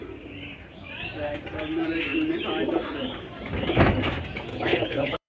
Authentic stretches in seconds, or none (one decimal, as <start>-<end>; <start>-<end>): 0.0-4.5